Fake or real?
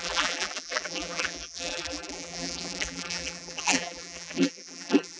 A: fake